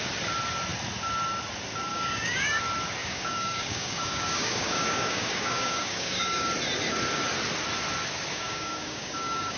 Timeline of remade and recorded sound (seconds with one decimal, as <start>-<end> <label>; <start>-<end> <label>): 0.0-1.9 recorded; 1.9-2.6 remade; 2.6-3.0 recorded; 3.0-6.5 remade; 6.5-8.3 recorded; 8.3-9.6 remade